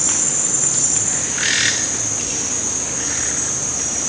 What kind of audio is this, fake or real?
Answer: real